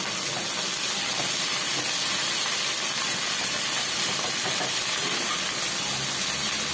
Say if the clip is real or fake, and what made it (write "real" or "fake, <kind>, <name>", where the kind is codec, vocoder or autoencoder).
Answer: real